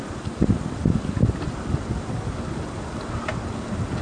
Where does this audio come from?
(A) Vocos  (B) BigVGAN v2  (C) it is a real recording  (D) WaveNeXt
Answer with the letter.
C